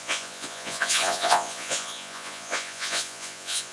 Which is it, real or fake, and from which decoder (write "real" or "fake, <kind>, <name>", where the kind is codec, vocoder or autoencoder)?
fake, vocoder, Vocos